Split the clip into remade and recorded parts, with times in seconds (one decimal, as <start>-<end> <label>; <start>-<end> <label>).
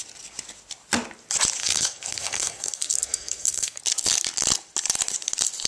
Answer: 0.0-1.6 recorded; 1.6-3.8 remade; 3.8-5.7 recorded